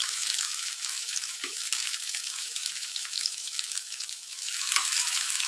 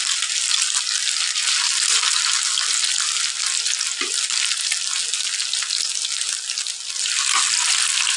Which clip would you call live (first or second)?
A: second